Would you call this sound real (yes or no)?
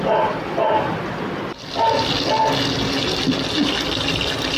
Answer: yes